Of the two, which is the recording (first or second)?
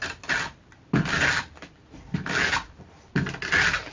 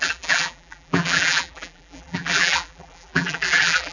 first